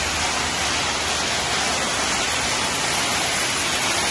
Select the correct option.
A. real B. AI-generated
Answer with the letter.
A